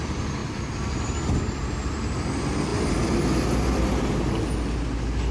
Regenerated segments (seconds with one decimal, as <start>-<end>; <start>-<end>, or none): 0.4-1.7